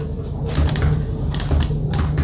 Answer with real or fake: real